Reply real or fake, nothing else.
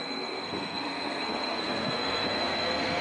fake